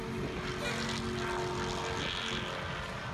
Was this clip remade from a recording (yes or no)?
no